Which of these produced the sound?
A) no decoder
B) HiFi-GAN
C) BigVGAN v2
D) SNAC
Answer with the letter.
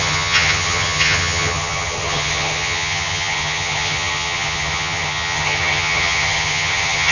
B